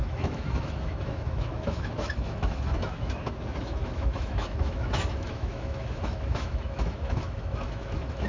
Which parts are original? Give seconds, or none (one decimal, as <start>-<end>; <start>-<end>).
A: none